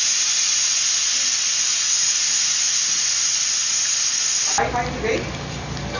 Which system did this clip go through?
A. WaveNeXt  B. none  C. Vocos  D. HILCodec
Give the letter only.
B